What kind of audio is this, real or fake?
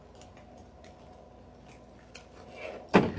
real